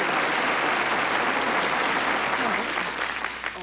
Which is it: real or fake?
real